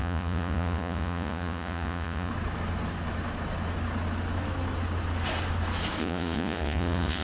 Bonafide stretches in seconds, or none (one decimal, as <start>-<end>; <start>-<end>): 2.3-6.0